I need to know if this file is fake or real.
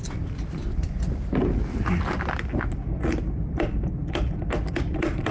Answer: real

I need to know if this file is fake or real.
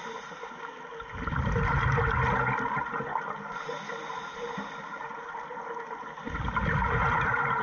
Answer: real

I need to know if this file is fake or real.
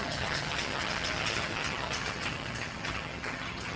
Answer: fake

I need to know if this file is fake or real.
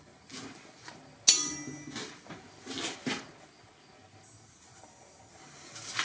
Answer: real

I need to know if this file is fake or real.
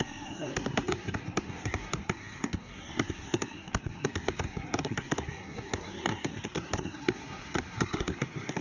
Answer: fake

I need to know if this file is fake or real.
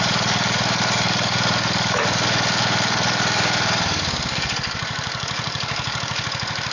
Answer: fake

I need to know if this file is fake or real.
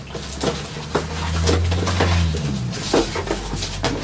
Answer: real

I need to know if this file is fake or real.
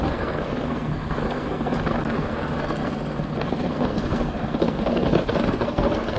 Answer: fake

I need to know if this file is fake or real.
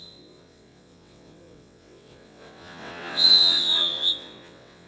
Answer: fake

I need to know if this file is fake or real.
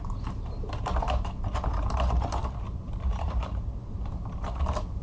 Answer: fake